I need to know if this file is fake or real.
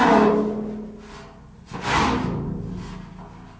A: real